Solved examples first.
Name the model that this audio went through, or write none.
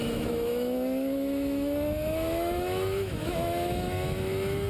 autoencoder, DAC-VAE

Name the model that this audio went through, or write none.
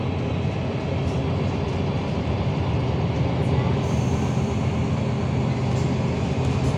none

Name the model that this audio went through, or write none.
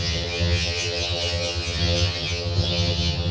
vocoder, HiFi-GAN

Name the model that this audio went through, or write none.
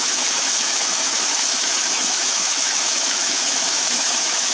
autoencoder, DAC-VAE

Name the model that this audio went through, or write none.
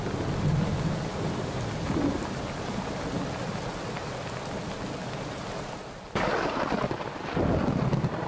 none